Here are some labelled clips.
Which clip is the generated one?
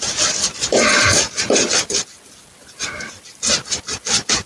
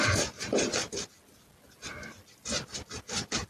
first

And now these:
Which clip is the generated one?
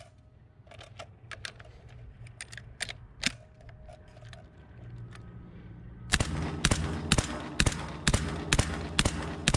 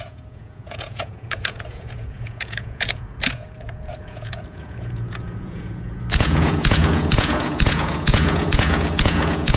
second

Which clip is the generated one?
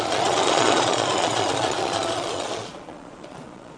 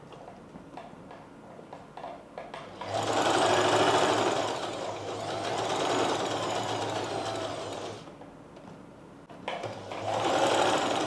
first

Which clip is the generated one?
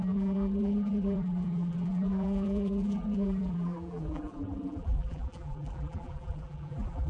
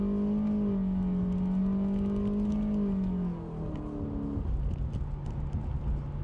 first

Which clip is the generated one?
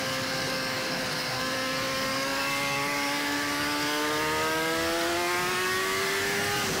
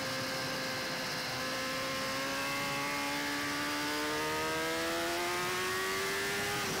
first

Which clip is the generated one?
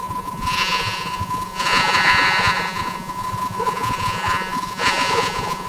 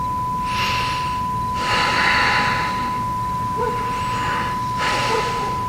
first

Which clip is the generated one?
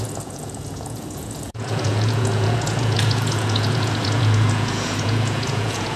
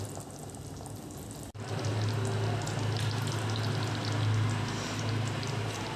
first